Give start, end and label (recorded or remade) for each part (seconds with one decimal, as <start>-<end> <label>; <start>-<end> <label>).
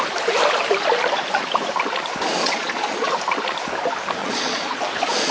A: 0.0-2.4 recorded; 2.4-3.1 remade; 3.1-4.2 recorded; 4.2-5.3 remade